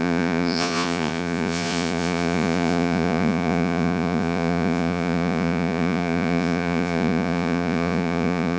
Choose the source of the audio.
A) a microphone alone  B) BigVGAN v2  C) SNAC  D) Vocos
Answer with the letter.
D